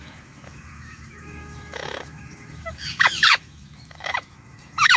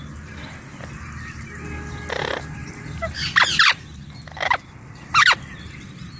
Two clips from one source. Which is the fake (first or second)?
first